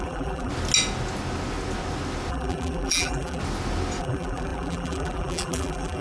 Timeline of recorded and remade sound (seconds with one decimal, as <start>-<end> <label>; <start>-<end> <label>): 0.0-0.5 remade; 0.5-2.3 recorded; 2.3-3.4 remade; 3.4-4.0 recorded; 4.0-6.0 remade